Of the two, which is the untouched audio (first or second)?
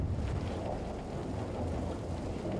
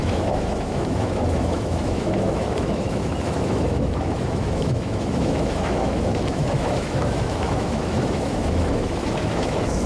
first